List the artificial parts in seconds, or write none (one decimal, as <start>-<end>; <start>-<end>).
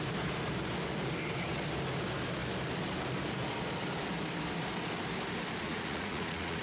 5.6-6.6